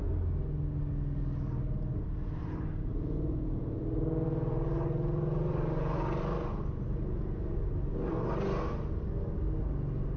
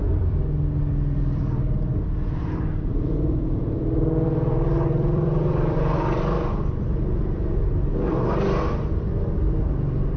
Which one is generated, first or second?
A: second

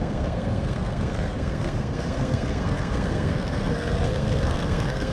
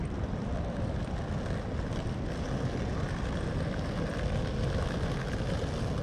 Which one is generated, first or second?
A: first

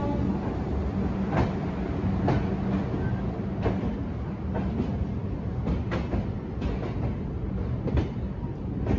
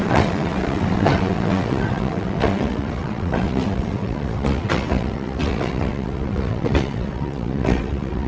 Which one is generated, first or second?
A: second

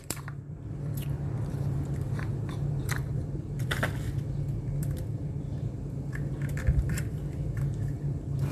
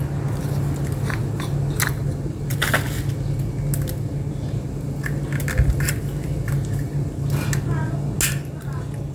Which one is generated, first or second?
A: first